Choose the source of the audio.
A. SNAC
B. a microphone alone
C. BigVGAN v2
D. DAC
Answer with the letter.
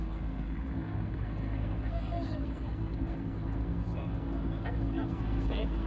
A